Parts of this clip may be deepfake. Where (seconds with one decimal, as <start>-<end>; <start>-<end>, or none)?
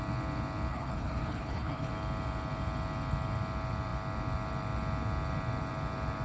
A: 0.7-1.9